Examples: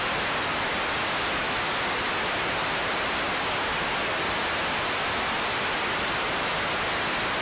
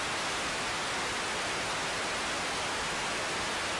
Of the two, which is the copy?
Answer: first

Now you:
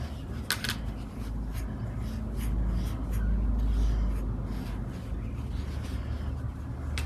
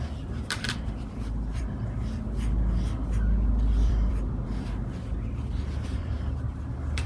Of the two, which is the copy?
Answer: second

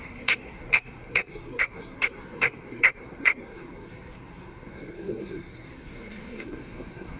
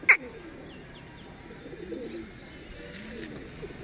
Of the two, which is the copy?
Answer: first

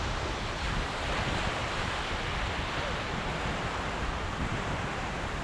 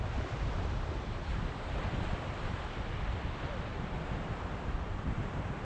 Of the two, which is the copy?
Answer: second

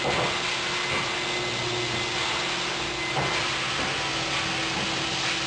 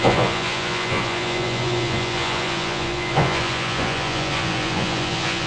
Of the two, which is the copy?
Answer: second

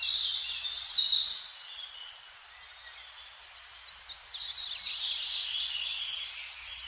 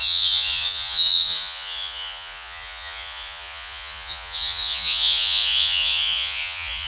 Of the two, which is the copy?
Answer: second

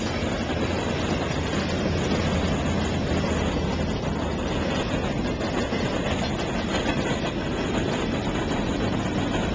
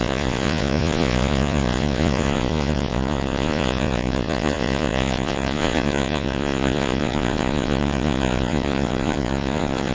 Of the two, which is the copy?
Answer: second